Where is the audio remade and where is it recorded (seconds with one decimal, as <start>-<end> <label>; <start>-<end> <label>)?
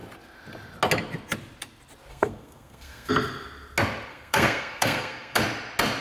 0.0-2.1 recorded; 2.1-3.1 remade; 3.1-4.1 recorded; 4.1-5.4 remade; 5.4-6.0 recorded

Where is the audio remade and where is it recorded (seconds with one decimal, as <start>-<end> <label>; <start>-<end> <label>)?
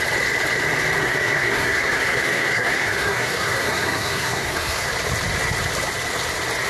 0.0-1.0 recorded; 1.0-4.9 remade; 4.9-6.7 recorded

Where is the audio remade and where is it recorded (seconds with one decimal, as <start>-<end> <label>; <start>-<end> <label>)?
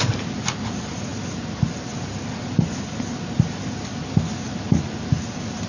0.0-5.7 recorded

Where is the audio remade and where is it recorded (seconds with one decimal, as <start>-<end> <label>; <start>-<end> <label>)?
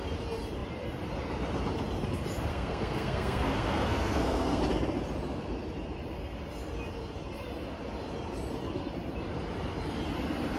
0.0-2.5 recorded; 2.5-4.6 remade; 4.6-10.6 recorded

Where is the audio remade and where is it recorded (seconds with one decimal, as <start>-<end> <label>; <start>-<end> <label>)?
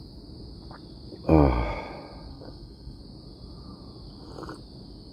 0.0-2.3 recorded; 2.3-3.0 remade; 3.0-5.1 recorded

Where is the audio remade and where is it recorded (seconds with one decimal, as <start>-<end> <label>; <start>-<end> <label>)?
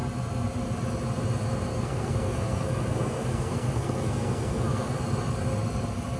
0.0-1.7 recorded; 1.7-5.0 remade; 5.0-6.2 recorded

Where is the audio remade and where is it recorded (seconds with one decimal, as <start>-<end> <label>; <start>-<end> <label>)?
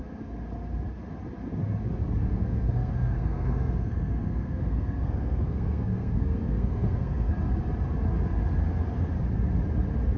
0.0-2.3 recorded; 2.3-7.3 remade; 7.3-10.2 recorded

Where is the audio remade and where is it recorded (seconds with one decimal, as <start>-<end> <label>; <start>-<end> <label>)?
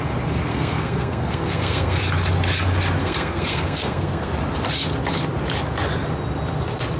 0.0-0.5 recorded; 0.5-2.0 remade; 2.0-3.0 recorded; 3.0-4.3 remade; 4.3-7.0 recorded